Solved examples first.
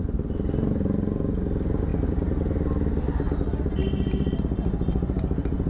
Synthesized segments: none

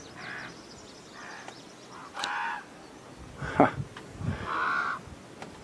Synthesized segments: none